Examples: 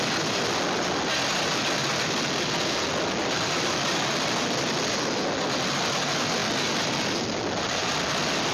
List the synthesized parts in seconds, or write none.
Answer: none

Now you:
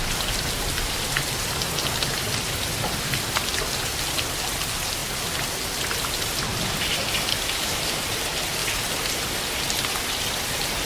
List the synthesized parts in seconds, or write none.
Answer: 7.3-7.8 (codec, DAC)

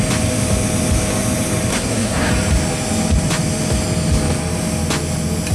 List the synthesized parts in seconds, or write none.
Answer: 1.7-2.3 (codec, SNAC)

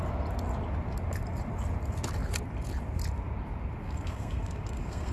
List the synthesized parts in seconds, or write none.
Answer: 3.8-5.1 (codec, SNAC)

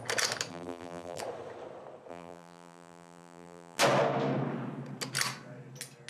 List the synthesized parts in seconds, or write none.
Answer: 0.5-1.2 (vocoder, BigVGAN v2); 2.1-3.8

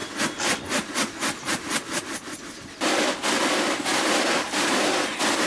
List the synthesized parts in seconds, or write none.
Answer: none

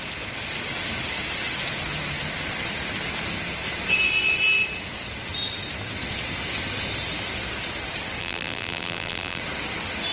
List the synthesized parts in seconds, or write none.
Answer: 8.2-9.4 (vocoder, BigVGAN v2)